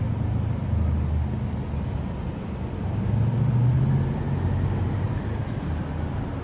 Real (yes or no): yes